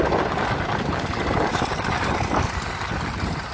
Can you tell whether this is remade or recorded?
recorded